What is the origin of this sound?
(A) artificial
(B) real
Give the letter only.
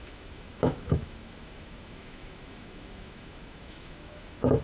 A